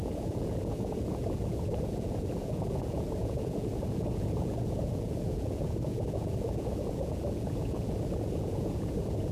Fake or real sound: fake